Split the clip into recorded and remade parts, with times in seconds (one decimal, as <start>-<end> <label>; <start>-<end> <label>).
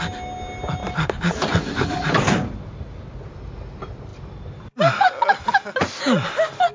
0.0-0.8 recorded; 0.8-2.2 remade; 2.2-6.7 recorded